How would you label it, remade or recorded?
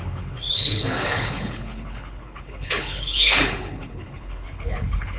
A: remade